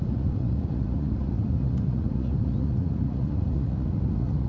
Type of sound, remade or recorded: remade